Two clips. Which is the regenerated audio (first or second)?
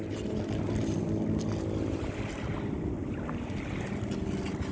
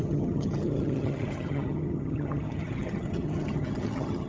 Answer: second